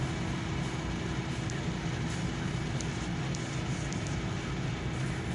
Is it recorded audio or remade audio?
recorded